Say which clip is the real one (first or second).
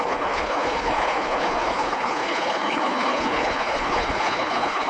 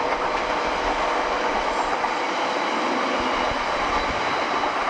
second